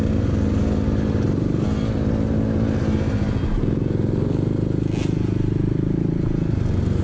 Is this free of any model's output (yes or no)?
yes